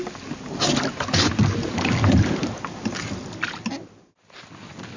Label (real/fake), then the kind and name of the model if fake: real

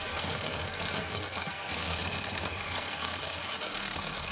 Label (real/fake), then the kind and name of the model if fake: fake, codec, SNAC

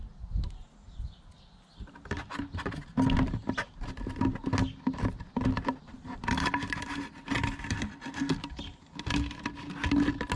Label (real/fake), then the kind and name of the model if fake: real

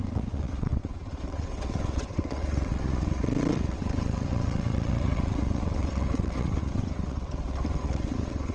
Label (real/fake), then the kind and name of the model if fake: fake, vocoder, WaveNeXt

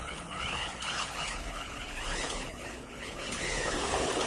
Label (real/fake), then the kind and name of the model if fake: fake, codec, HILCodec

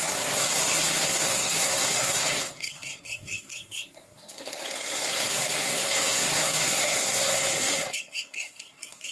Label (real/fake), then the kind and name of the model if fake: fake, codec, SNAC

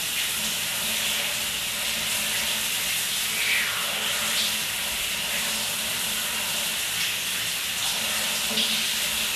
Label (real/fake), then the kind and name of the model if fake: real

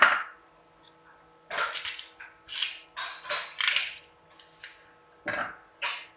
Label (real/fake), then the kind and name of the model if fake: real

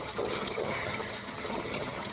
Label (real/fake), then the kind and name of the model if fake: fake, vocoder, HiFi-GAN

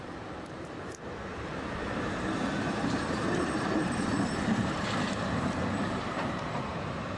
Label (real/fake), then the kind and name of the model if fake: fake, vocoder, BigVGAN v2